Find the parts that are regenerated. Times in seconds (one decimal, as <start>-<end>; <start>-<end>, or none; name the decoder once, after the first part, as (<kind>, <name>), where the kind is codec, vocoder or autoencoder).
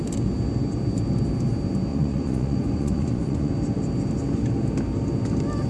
1.9-3.5 (vocoder, Vocos)